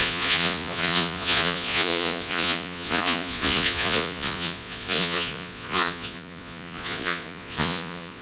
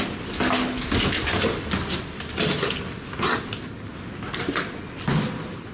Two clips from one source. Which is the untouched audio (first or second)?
second